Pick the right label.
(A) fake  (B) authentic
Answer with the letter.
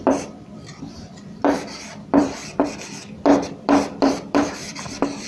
A